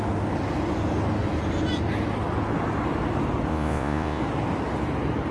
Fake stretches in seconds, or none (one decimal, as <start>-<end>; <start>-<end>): 3.5-4.2